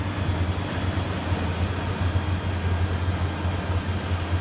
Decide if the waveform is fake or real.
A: real